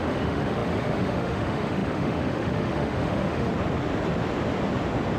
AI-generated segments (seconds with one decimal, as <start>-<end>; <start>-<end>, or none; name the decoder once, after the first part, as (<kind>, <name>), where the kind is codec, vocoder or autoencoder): 0.0-3.5 (autoencoder, DAC-VAE)